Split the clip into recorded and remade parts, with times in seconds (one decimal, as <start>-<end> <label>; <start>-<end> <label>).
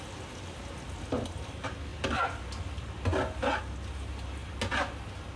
0.0-5.4 recorded